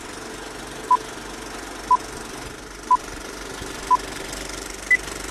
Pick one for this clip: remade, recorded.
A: recorded